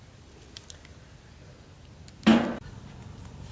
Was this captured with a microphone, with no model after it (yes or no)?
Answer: yes